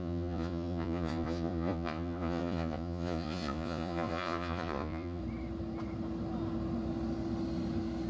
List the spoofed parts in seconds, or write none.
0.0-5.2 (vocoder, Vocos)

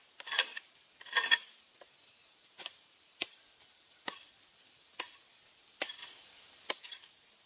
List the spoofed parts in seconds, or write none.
0.5-5.0 (vocoder, BigVGAN v2); 6.0-6.7

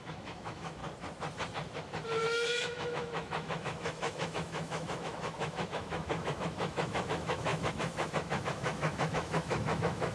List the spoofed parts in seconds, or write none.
0.0-0.8 (autoencoder, DAC-VAE); 2.2-10.1